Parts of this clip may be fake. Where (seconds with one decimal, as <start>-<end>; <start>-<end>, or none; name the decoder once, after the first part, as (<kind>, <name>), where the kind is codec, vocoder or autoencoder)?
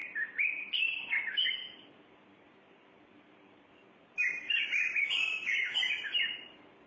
0.0-5.5 (vocoder, BigVGAN v2)